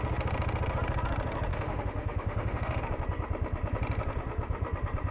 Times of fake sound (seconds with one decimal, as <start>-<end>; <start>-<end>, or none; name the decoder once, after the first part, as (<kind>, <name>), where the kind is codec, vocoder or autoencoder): 1.5-2.8 (autoencoder, DAC-VAE)